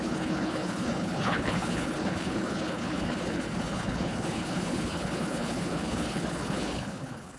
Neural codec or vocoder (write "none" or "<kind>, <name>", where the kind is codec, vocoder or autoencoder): codec, HILCodec